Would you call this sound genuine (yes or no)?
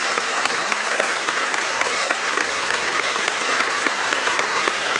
no